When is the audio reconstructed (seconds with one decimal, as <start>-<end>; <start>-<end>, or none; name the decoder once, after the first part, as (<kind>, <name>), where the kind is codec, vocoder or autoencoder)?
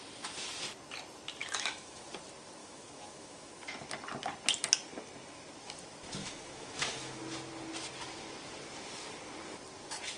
1.4-2.1 (autoencoder, DAC-VAE); 2.6-3.5; 6.2-7.2